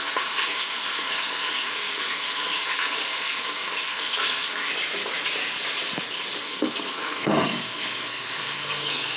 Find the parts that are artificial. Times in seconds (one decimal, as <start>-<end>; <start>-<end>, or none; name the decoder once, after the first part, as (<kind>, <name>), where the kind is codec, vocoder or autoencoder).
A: 0.0-4.7 (codec, SNAC); 6.4-9.2